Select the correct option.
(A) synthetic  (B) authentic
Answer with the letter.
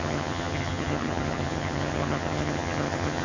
A